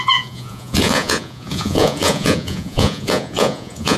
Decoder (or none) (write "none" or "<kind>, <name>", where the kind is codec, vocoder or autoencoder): vocoder, Vocos